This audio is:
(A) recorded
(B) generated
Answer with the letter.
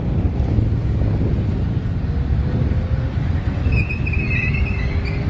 A